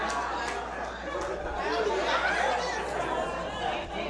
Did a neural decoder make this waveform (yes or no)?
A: no